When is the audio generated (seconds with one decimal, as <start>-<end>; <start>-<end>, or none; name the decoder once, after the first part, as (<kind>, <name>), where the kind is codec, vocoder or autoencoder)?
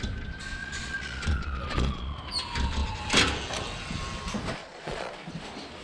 0.6-2.2 (vocoder, Vocos); 4.6-5.1